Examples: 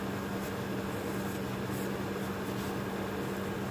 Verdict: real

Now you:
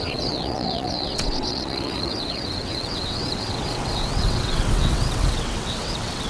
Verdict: fake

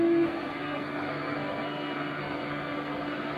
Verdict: fake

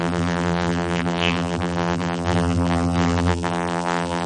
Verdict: fake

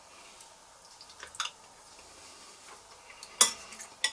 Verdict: real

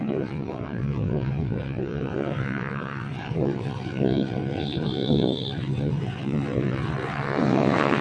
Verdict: fake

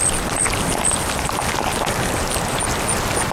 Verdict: real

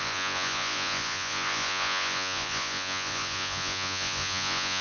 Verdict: fake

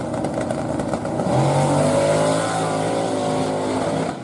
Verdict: real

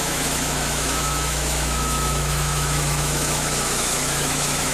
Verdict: fake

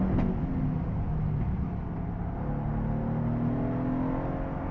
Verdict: real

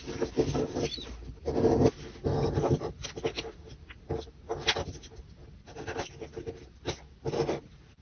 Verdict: real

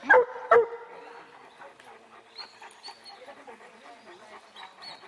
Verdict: real